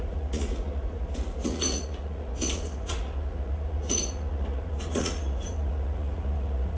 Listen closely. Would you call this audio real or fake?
fake